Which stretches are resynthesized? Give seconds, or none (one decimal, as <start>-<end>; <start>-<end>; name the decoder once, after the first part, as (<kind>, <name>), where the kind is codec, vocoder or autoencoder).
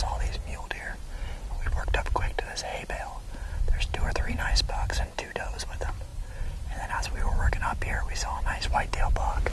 0.9-1.8 (vocoder, BigVGAN v2); 6.1-7.5